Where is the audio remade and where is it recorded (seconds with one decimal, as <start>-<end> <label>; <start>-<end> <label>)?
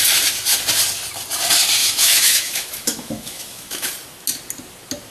0.0-1.8 recorded; 1.8-3.9 remade; 3.9-5.1 recorded